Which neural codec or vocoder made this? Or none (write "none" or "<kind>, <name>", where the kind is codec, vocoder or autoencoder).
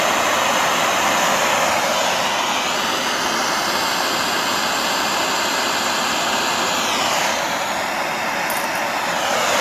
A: none